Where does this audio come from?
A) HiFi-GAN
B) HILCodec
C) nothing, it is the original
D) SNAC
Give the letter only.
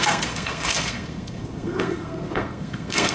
D